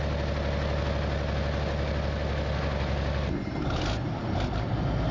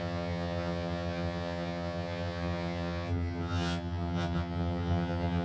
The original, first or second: first